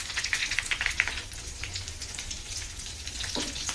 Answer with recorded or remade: remade